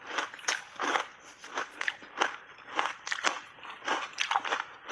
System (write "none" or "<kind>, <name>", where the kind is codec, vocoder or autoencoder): none